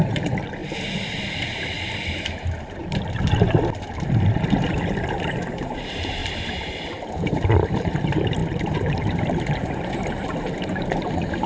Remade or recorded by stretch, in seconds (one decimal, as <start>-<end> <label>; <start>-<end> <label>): 0.0-0.6 remade; 0.6-2.1 recorded; 2.1-2.8 remade; 2.8-3.8 recorded; 3.8-6.2 remade; 6.2-7.2 recorded; 7.2-11.5 remade

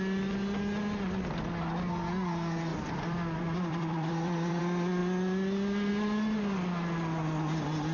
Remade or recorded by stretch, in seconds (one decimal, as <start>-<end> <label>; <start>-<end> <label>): 0.0-2.7 recorded; 2.7-4.6 remade; 4.6-7.9 recorded

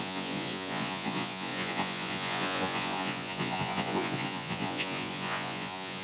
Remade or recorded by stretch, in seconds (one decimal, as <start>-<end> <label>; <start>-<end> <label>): 0.0-6.0 remade

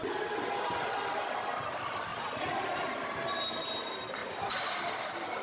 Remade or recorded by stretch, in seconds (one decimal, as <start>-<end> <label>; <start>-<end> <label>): 0.0-2.1 recorded; 2.1-2.9 remade; 2.9-5.4 recorded

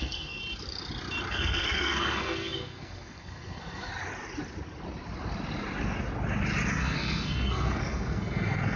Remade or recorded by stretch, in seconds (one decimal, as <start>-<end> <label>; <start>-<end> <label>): 0.0-0.4 remade; 0.4-1.3 recorded; 1.3-3.9 remade; 3.9-6.7 recorded; 6.7-8.8 remade

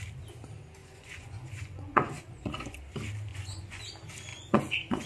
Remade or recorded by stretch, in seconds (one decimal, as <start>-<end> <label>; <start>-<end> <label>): 0.0-0.8 recorded; 0.8-2.8 remade; 2.8-3.3 recorded; 3.3-3.8 remade; 3.8-4.3 recorded; 4.3-5.1 remade